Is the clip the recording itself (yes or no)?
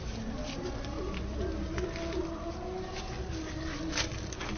yes